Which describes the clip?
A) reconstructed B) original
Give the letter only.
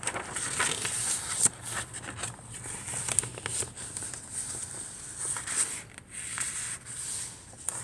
B